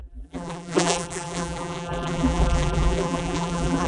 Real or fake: fake